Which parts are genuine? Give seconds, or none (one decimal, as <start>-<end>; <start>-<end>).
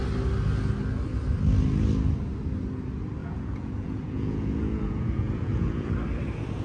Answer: 0.0-3.2; 5.9-6.6